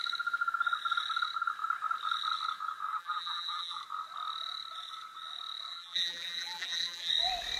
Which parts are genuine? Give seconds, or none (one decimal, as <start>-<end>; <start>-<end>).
0.0-2.9; 3.8-5.7; 7.1-7.6